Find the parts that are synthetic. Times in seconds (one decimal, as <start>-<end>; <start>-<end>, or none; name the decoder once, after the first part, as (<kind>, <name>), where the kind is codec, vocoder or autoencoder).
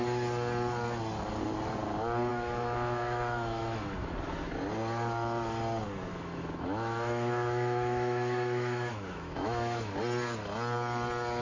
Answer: 2.3-4.1 (autoencoder, DAC-VAE); 6.1-9.9